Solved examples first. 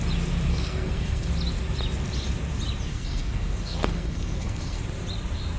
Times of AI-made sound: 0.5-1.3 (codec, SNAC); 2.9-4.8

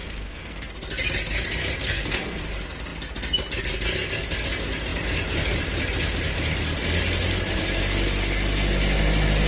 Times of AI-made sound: 0.0-0.7 (codec, SNAC); 1.8-2.4

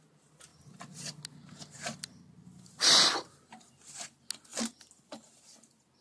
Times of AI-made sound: none